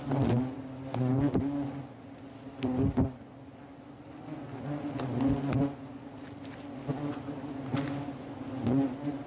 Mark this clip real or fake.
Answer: real